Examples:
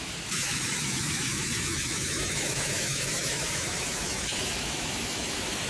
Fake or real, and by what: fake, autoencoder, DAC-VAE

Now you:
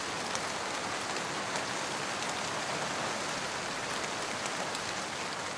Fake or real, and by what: real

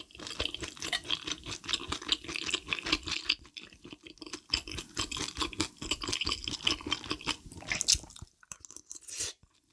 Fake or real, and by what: real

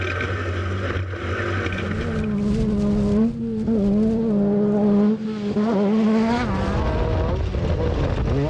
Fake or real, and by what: real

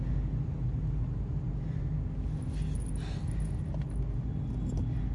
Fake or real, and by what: real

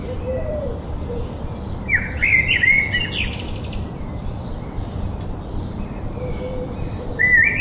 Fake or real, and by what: fake, vocoder, BigVGAN v2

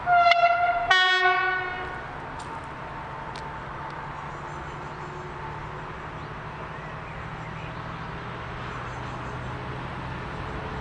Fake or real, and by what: real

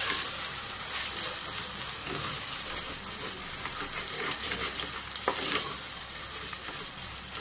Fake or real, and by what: fake, vocoder, BigVGAN v2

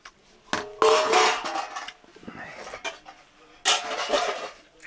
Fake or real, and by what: real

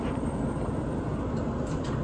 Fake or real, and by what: fake, vocoder, BigVGAN v2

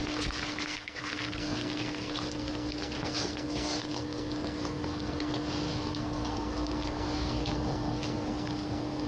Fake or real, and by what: fake, codec, SNAC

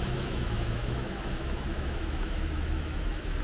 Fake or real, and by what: fake, autoencoder, DAC-VAE